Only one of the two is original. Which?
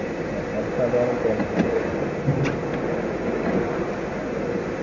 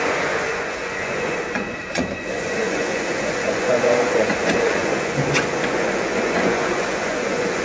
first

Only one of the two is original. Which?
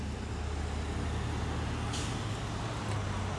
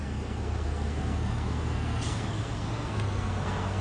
first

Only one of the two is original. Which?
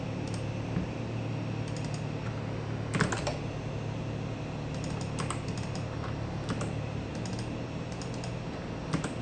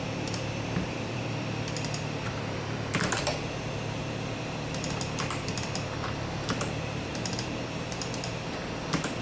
first